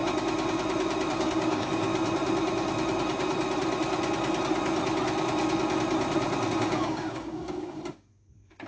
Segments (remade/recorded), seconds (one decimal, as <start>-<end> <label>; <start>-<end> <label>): 0.0-1.1 recorded; 1.1-1.9 remade; 1.9-6.5 recorded; 6.5-8.7 remade